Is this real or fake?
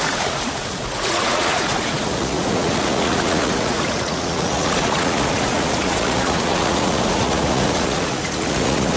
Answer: fake